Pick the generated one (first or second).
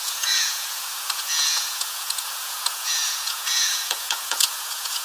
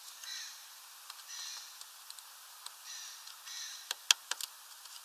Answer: first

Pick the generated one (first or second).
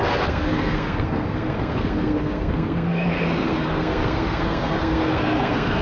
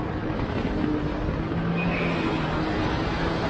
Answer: first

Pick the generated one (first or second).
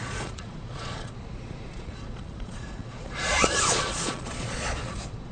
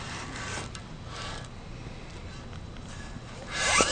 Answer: first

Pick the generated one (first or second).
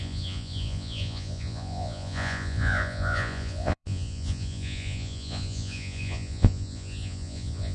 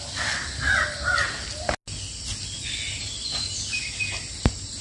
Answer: first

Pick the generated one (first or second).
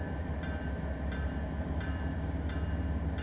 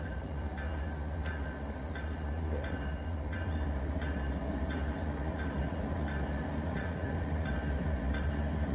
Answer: second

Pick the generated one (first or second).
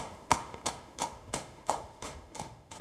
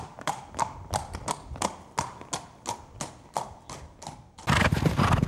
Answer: first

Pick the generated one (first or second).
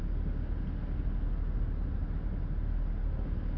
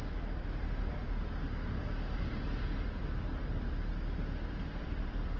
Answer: second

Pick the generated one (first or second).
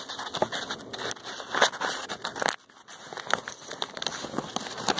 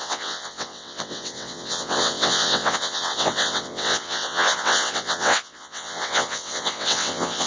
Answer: second